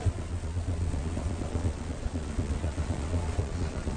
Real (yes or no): no